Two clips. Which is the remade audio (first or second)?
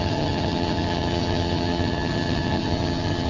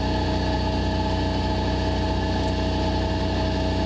first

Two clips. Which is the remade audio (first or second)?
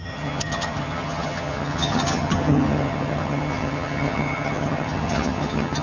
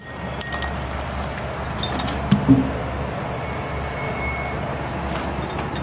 first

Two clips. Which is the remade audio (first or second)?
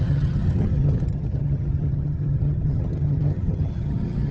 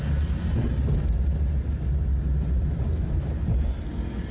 first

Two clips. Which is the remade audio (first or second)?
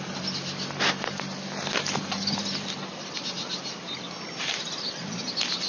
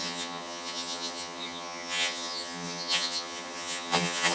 second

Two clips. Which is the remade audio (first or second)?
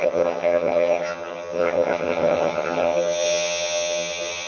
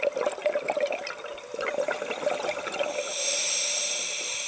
first